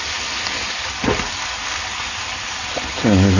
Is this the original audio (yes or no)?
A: yes